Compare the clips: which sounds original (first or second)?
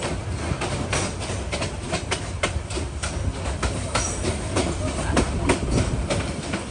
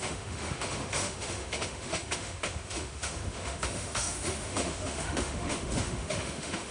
first